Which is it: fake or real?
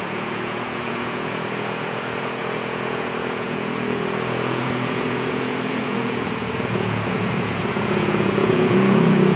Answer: fake